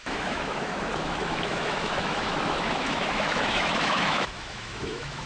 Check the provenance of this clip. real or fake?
fake